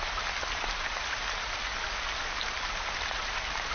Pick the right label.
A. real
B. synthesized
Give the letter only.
A